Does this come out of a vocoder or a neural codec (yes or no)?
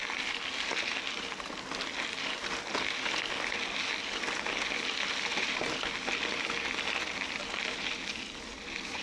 no